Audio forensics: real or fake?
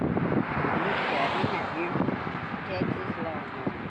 real